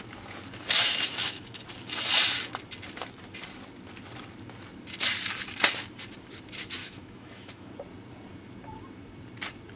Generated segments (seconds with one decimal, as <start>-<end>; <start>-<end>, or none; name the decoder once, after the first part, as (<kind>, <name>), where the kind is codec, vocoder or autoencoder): 1.1-1.6 (autoencoder, DAC-VAE); 6.8-7.7